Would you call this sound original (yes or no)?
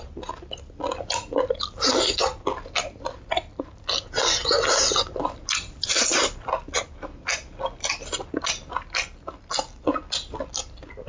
yes